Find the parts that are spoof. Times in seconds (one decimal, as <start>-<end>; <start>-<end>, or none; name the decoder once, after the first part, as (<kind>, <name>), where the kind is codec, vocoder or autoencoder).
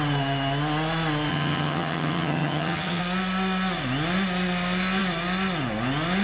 1.3-3.0 (vocoder, HiFi-GAN)